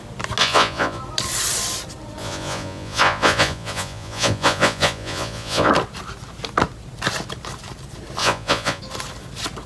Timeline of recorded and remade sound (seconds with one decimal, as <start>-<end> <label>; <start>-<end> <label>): 0.0-0.4 recorded; 0.4-1.0 remade; 1.0-2.2 recorded; 2.2-5.7 remade; 5.7-8.2 recorded; 8.2-8.8 remade; 8.8-9.7 recorded